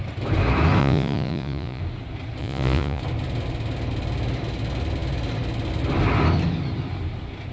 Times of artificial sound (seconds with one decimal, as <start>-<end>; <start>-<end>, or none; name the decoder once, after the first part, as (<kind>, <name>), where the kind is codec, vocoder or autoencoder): 0.8-1.8 (vocoder, Vocos); 2.4-3.0